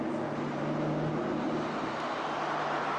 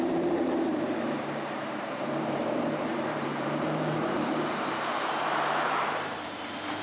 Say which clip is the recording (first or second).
first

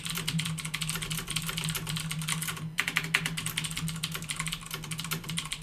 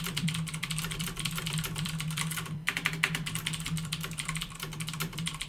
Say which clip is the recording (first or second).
first